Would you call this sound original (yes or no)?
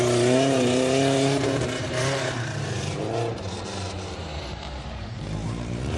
no